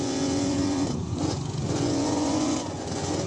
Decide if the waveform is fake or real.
fake